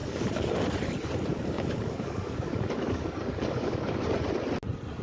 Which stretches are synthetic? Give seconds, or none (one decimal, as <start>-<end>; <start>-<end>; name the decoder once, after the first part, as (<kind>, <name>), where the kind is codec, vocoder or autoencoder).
0.0-0.5 (codec, DAC); 1.3-3.9